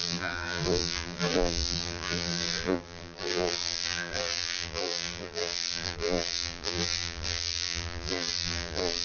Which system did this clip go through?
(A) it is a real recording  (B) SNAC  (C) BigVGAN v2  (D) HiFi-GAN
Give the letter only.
C